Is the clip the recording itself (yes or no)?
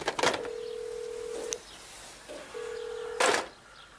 yes